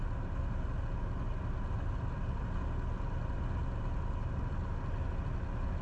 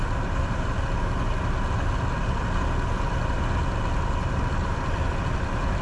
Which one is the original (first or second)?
first